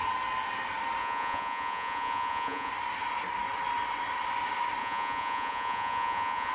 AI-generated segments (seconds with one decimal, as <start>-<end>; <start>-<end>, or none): 1.0-2.7; 4.8-6.5